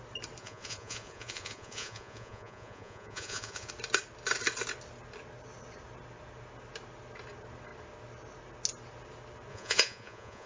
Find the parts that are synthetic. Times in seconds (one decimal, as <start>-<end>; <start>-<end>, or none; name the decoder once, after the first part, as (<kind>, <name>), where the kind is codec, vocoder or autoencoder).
0.4-3.7 (vocoder, Vocos); 9.5-10.5